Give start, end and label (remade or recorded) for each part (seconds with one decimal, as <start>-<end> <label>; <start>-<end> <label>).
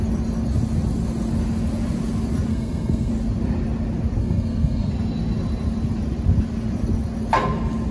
0.0-2.5 recorded; 2.5-3.1 remade; 3.1-4.2 recorded; 4.2-4.9 remade; 4.9-7.9 recorded